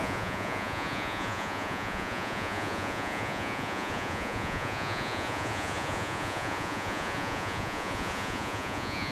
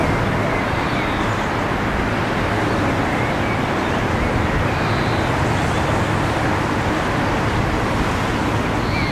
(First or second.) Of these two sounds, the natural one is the second